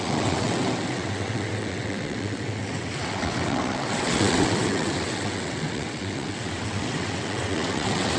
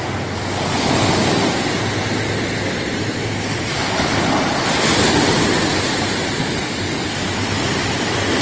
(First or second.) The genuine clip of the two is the second